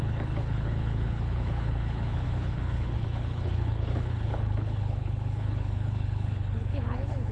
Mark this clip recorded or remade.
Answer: remade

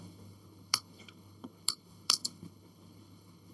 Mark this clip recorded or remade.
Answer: remade